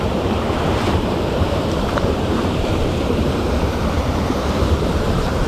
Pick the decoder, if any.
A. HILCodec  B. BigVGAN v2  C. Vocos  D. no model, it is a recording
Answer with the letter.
B